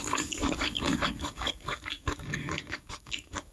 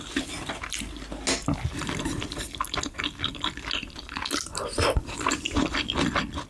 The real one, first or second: second